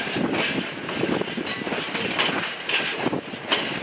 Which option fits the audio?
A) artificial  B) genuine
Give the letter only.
B